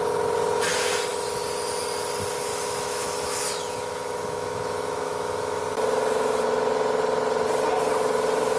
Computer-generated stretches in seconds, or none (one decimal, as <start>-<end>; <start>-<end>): 2.5-5.6